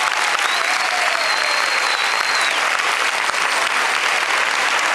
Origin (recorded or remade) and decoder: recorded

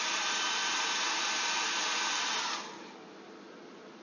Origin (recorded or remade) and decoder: recorded